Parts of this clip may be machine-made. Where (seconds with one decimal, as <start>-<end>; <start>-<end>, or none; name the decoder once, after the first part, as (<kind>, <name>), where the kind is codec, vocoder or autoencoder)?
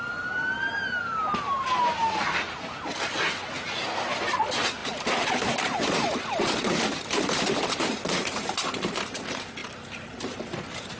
4.8-9.0 (vocoder, BigVGAN v2); 9.6-10.2